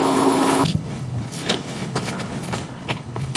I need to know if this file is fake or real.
fake